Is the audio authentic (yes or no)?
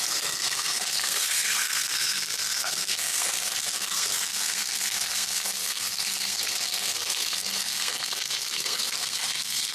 no